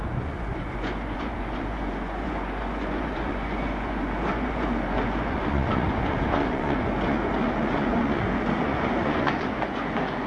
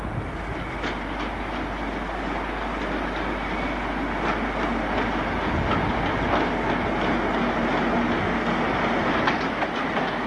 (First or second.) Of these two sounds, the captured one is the second